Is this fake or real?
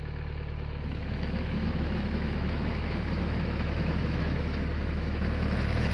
fake